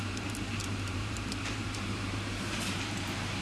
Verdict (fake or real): fake